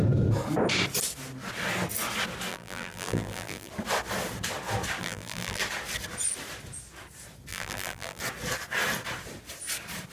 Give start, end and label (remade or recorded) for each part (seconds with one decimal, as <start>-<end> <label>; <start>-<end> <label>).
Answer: 0.0-2.5 recorded; 2.5-3.7 remade; 3.7-5.0 recorded; 5.0-5.6 remade; 5.6-7.5 recorded; 7.5-8.2 remade; 8.2-10.1 recorded